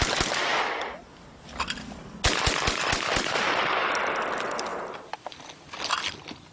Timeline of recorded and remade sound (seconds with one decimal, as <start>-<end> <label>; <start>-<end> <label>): 0.0-6.5 recorded